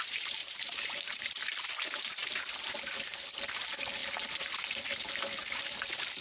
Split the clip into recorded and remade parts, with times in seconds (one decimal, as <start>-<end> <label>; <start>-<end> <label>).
0.0-0.4 recorded; 0.4-1.4 remade; 1.4-6.2 recorded